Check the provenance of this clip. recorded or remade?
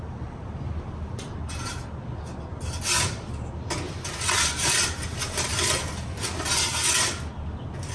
recorded